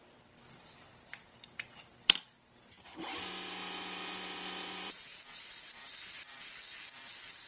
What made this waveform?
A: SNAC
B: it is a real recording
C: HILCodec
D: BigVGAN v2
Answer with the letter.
D